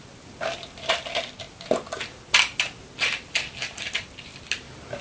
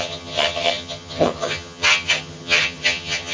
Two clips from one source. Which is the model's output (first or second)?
second